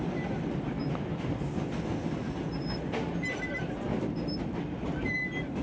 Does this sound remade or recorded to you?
recorded